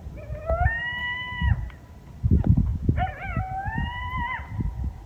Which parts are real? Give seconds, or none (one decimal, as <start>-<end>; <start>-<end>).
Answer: 0.0-1.0; 1.5-5.1